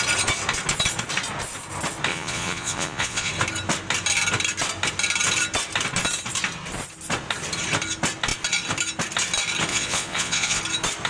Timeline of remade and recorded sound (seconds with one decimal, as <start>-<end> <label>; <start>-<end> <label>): 0.0-2.1 recorded; 2.1-3.3 remade; 3.3-9.7 recorded; 9.7-10.6 remade; 10.6-11.1 recorded